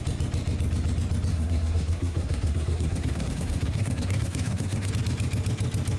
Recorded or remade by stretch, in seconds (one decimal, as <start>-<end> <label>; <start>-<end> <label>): 0.0-1.3 recorded; 1.3-4.9 remade; 4.9-6.0 recorded